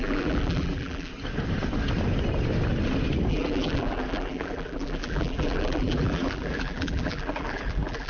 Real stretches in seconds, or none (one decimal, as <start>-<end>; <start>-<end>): 1.1-3.3